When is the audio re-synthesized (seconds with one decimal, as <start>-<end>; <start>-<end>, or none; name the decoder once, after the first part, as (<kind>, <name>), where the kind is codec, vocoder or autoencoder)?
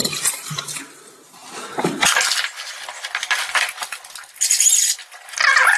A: 0.0-0.8 (vocoder, BigVGAN v2)